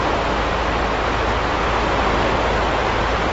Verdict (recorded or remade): recorded